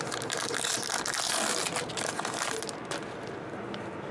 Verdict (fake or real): real